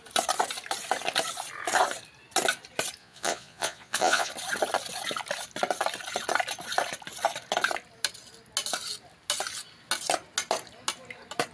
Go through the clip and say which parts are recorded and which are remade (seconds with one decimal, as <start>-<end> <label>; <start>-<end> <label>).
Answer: 0.0-3.0 recorded; 3.0-4.3 remade; 4.3-11.5 recorded